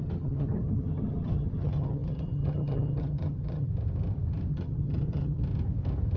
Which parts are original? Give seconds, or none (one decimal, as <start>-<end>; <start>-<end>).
3.7-4.5; 5.4-6.2